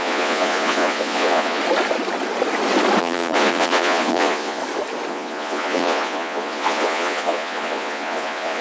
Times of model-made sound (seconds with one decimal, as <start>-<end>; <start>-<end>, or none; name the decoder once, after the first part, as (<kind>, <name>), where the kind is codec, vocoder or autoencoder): 0.0-1.6 (vocoder, Vocos); 3.0-4.6; 5.1-8.6